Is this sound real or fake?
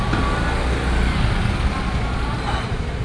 real